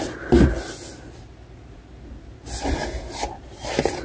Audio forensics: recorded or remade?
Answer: recorded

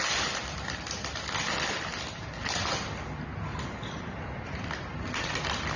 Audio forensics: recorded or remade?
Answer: recorded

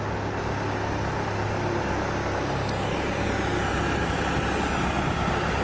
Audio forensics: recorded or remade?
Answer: recorded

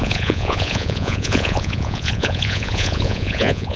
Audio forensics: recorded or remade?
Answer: remade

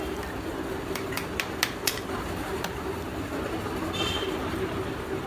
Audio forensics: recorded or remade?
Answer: recorded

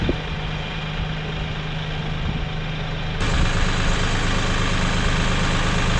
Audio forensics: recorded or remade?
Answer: recorded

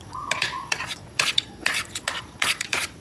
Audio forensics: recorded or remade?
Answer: remade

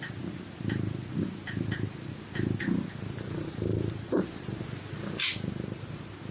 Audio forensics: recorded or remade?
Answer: recorded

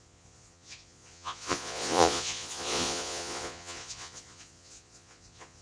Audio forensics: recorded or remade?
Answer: remade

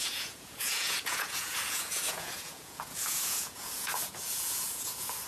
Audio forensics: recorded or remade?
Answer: remade